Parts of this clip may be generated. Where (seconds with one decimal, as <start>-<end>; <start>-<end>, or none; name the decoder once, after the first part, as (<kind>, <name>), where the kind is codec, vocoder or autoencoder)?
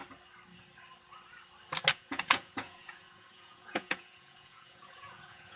1.9-5.6 (vocoder, Vocos)